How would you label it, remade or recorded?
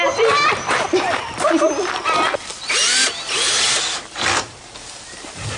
recorded